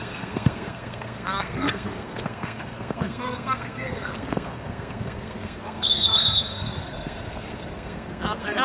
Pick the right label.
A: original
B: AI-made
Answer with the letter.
B